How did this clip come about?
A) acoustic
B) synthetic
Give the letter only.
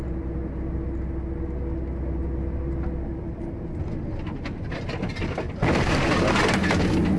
A